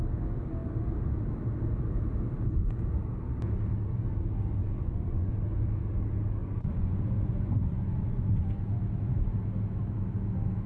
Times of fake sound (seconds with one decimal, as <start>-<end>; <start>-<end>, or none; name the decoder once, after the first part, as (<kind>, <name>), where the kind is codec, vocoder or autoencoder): 4.6-5.3 (vocoder, Vocos); 6.4-8.8